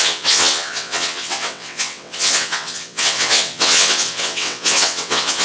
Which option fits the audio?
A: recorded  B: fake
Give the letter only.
B